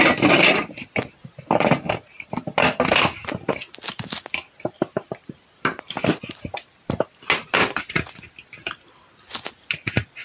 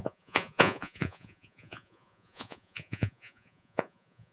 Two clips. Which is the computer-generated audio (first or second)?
second